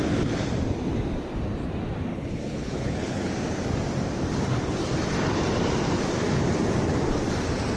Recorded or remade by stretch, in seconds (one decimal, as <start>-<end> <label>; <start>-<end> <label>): 0.0-2.1 recorded; 2.1-3.3 remade; 3.3-7.8 recorded

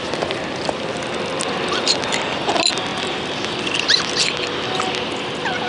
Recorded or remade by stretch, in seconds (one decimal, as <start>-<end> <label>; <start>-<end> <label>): 0.0-5.7 recorded

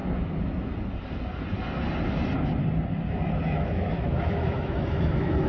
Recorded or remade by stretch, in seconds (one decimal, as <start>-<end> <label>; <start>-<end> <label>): 0.0-3.3 recorded; 3.3-5.5 remade